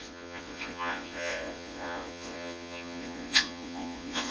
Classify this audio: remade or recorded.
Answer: remade